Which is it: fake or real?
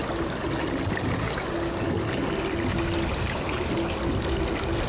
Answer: real